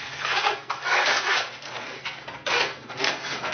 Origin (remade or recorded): remade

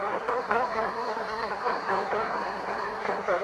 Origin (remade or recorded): remade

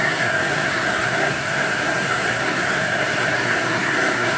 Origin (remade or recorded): remade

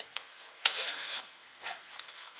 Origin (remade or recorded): remade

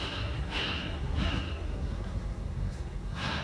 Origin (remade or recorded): remade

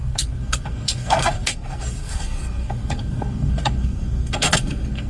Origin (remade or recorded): remade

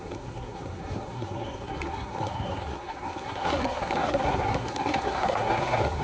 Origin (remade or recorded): remade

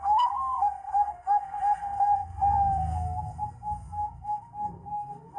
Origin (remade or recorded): remade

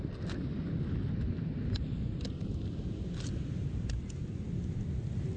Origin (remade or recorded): recorded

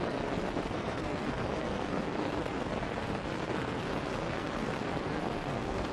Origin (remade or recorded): remade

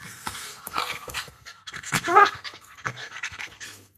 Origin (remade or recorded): remade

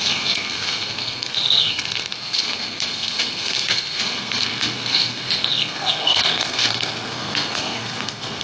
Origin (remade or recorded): remade